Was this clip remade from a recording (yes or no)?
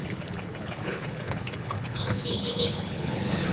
yes